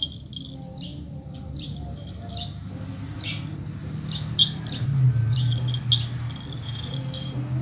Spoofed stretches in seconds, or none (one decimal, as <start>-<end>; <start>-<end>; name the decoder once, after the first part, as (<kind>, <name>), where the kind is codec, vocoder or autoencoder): 0.9-4.6 (vocoder, BigVGAN v2)